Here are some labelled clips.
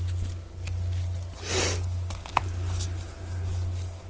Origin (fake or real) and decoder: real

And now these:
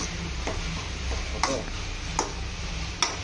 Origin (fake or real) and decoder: real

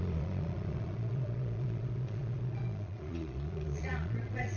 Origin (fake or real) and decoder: fake, vocoder, Vocos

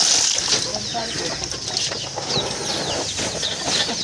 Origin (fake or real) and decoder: real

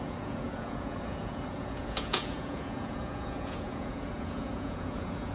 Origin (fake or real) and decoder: fake, vocoder, Vocos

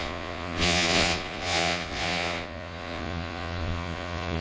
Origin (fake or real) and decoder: fake, vocoder, Vocos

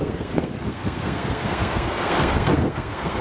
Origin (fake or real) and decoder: fake, codec, SNAC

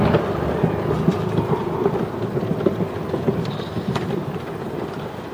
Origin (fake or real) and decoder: real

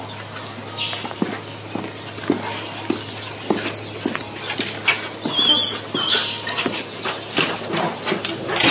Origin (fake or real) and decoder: real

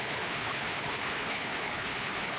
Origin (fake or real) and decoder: fake, codec, HILCodec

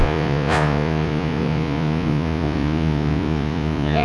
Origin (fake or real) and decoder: fake, vocoder, Vocos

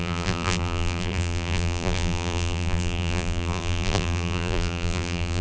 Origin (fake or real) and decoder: fake, vocoder, BigVGAN v2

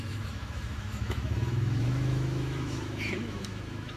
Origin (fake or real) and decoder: fake, autoencoder, DAC-VAE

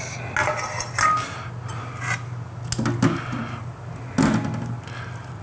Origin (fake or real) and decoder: real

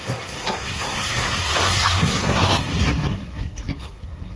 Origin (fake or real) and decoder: fake, codec, SNAC